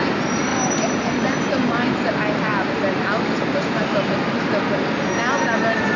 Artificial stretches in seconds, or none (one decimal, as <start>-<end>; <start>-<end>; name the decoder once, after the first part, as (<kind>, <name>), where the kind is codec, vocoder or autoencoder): none

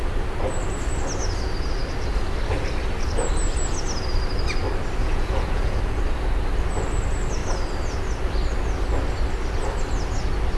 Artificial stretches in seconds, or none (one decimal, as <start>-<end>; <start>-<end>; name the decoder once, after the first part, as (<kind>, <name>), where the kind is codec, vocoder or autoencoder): 5.0-5.8 (vocoder, Vocos)

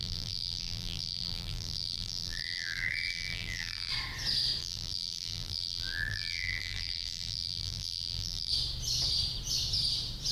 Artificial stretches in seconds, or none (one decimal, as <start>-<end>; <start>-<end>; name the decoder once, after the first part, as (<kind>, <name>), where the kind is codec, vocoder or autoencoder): 0.0-3.9 (vocoder, BigVGAN v2); 4.6-8.5

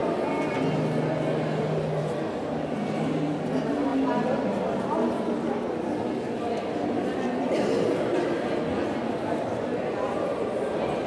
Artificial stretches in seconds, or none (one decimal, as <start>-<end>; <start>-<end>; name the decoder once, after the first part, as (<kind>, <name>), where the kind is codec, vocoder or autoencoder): none

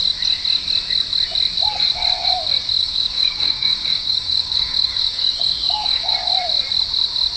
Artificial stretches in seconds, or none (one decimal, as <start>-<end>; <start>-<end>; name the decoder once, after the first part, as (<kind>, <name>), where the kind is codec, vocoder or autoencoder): 2.8-6.1 (codec, DAC)